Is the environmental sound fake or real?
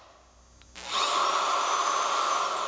real